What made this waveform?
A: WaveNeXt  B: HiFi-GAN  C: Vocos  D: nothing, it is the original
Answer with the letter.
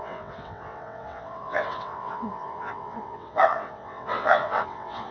A